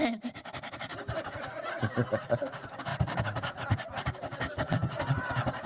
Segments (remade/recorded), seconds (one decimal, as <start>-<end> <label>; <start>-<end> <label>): 0.0-5.7 recorded

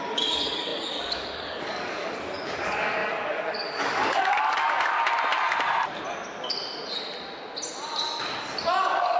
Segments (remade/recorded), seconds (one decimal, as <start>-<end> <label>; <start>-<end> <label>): 0.0-4.9 remade; 4.9-8.4 recorded; 8.4-9.2 remade

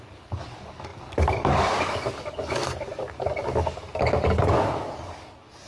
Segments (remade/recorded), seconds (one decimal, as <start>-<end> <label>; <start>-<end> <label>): 0.0-5.7 remade

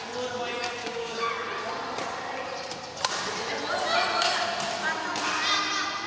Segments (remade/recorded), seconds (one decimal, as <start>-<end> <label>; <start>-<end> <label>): 0.0-0.8 recorded; 0.8-1.3 remade; 1.3-6.1 recorded